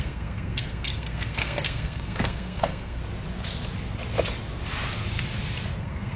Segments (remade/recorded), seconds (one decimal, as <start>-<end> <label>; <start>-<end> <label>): 0.0-3.0 remade; 3.0-5.8 recorded; 5.8-6.2 remade